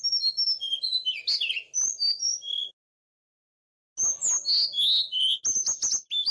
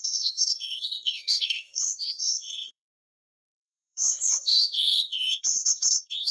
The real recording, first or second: first